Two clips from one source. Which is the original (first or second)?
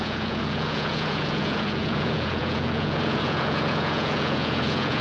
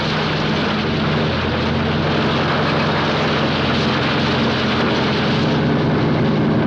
second